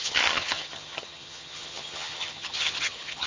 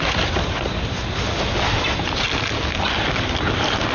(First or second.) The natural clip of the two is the second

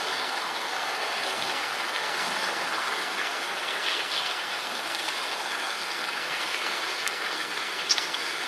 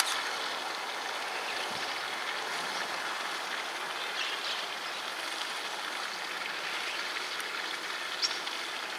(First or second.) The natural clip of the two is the second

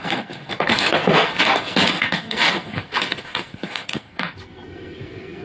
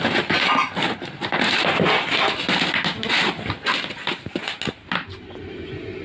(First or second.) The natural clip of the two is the second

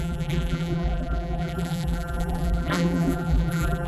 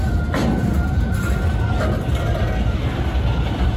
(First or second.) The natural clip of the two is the second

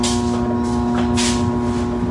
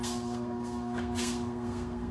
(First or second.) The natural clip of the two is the first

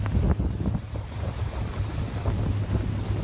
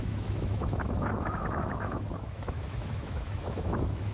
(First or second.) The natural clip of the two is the first